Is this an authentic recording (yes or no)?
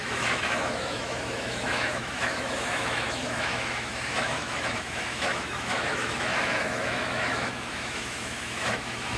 no